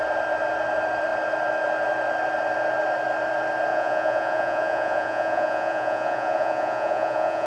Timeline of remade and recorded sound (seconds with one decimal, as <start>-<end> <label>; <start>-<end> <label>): 0.0-3.7 recorded; 3.7-7.5 remade